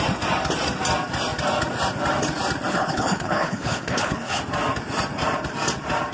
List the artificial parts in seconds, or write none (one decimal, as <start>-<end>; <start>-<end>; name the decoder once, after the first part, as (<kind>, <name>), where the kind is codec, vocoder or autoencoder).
2.7-4.4 (codec, HILCodec)